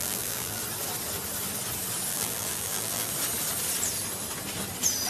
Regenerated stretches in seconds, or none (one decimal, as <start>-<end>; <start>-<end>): 0.0-0.6; 2.1-3.1

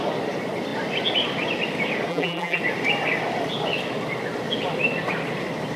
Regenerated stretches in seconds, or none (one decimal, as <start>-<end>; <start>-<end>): 2.1-2.6

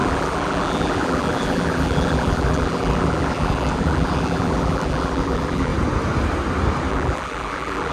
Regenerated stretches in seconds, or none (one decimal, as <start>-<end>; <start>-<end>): 0.0-5.7; 6.9-7.9

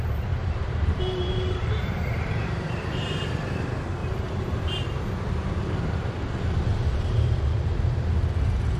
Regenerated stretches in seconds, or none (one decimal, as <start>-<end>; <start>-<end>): 0.4-3.2; 4.0-6.1; 6.7-7.7

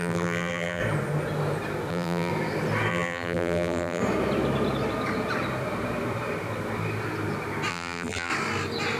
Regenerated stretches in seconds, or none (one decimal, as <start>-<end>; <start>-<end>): 0.0-0.8; 1.9-2.3; 2.9-4.0; 7.7-8.3